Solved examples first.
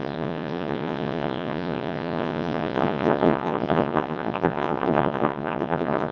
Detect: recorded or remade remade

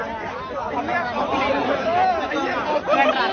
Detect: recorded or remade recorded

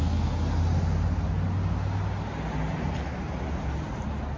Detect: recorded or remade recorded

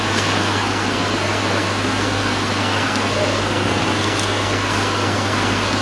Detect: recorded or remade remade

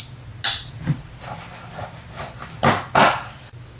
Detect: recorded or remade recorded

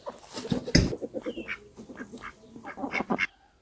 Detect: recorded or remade recorded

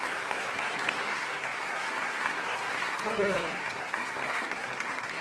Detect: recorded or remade remade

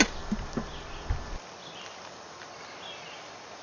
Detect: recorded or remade recorded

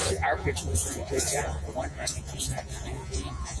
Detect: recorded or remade remade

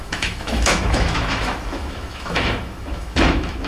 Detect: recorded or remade remade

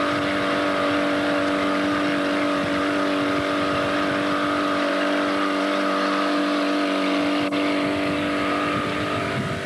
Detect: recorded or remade recorded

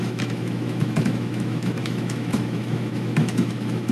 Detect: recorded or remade remade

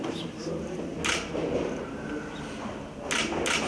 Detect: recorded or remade recorded